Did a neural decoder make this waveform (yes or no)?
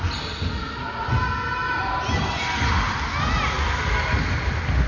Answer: no